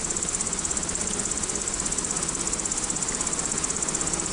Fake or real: real